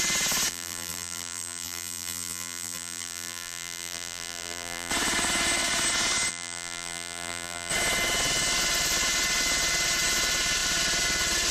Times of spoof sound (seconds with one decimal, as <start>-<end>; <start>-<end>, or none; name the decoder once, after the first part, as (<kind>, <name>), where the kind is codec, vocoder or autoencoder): 0.5-4.9 (vocoder, BigVGAN v2); 6.3-7.7